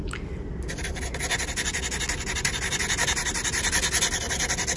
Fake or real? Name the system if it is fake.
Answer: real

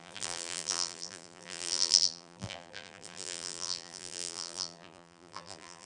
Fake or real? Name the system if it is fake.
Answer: fake, vocoder, BigVGAN v2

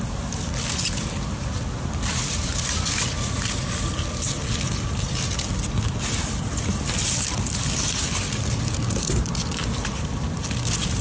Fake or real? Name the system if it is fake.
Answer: real